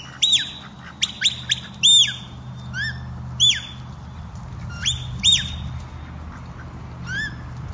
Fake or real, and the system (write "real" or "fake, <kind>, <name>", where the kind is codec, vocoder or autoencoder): real